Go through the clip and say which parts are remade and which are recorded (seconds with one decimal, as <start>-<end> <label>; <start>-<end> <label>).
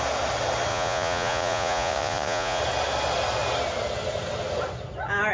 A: 0.0-0.7 recorded; 0.7-2.6 remade; 2.6-5.3 recorded